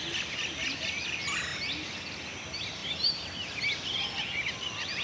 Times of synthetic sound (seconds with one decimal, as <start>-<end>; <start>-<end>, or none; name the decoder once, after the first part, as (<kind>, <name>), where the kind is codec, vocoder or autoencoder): 1.5-2.2 (vocoder, BigVGAN v2); 2.8-4.1